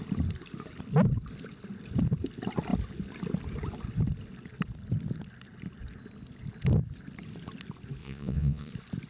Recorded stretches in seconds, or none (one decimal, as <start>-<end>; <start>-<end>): 0.0-8.0; 8.7-9.1